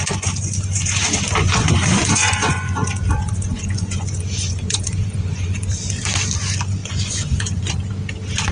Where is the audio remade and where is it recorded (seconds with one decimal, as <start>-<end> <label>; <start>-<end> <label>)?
0.0-1.4 recorded; 1.4-5.7 remade; 5.7-6.8 recorded; 6.8-7.7 remade; 7.7-8.5 recorded